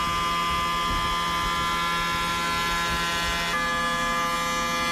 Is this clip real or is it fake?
real